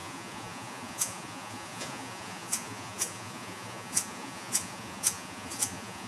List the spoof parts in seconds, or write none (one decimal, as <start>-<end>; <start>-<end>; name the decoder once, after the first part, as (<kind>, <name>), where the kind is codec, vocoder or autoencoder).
0.0-6.1 (vocoder, Vocos)